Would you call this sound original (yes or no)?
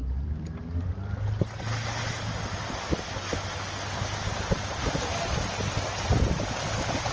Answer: yes